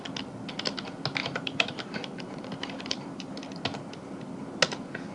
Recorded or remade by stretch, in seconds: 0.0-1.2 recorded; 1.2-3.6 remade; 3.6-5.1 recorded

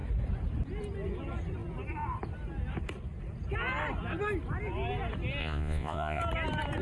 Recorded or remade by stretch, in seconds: 0.0-5.4 recorded; 5.4-6.2 remade; 6.2-6.8 recorded

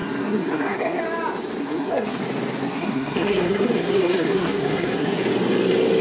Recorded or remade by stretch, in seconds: 0.0-1.0 remade; 1.0-1.6 recorded; 1.6-2.2 remade; 2.2-2.6 recorded; 2.6-5.2 remade; 5.2-6.0 recorded